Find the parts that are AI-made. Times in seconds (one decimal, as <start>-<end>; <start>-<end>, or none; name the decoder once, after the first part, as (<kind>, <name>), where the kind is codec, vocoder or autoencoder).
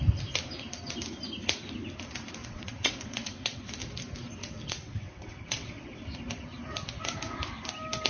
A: 2.4-3.7 (vocoder, WaveNeXt); 4.4-6.0